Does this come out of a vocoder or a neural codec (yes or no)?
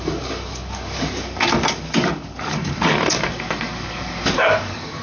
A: yes